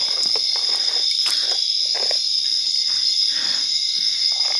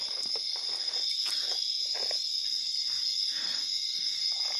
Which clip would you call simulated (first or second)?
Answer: first